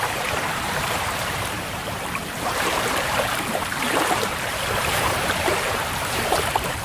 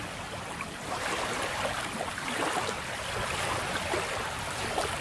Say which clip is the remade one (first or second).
first